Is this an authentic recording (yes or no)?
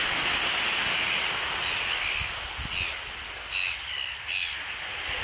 yes